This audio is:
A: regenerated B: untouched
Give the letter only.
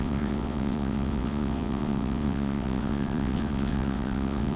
A